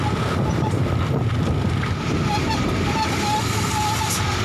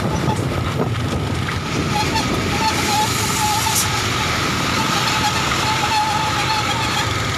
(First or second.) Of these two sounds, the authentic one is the first